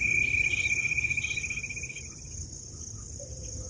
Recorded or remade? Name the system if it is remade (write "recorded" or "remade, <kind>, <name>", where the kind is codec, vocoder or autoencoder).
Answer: recorded